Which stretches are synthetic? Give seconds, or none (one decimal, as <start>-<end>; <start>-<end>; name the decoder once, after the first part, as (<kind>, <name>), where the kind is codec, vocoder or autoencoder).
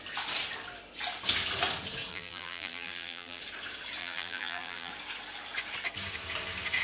2.1-3.4 (vocoder, BigVGAN v2); 4.0-4.9